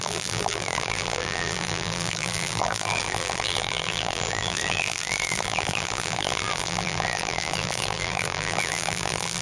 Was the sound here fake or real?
fake